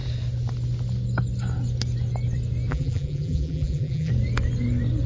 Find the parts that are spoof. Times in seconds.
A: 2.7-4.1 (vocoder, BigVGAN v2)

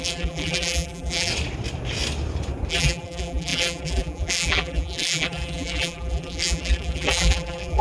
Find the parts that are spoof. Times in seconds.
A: 0.0-1.3 (vocoder, BigVGAN v2); 2.7-7.8

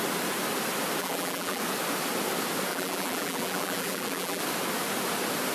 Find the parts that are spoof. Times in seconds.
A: 1.0-1.6 (vocoder, BigVGAN v2); 2.7-4.4

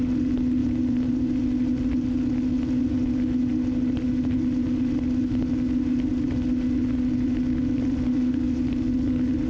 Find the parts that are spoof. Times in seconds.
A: 0.6-1.1 (vocoder, BigVGAN v2)

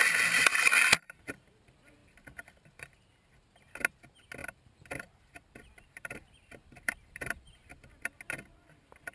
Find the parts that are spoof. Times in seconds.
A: 4.4-7.8 (vocoder, BigVGAN v2)

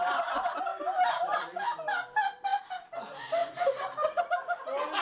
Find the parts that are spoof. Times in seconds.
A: 0.7-1.4 (vocoder, BigVGAN v2); 3.4-4.2